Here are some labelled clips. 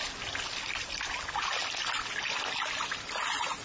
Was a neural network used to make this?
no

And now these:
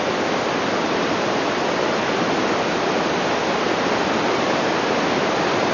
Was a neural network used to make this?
no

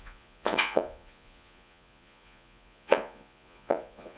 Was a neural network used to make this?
yes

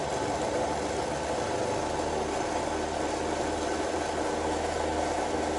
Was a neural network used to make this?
no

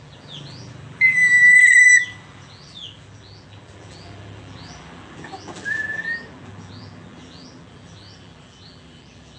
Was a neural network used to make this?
yes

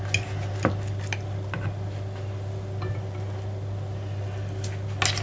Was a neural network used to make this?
no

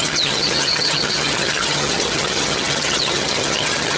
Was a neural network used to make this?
yes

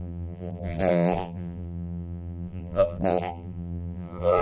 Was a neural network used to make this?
yes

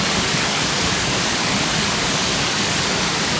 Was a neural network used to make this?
yes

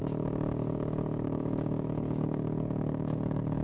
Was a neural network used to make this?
yes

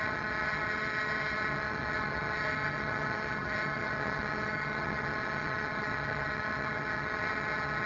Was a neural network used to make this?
yes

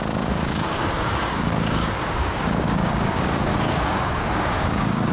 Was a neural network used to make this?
yes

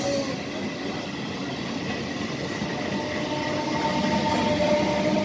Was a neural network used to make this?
no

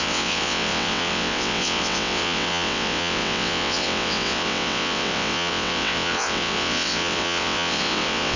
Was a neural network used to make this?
yes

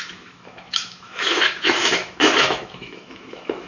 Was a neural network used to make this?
yes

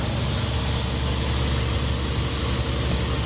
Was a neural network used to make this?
no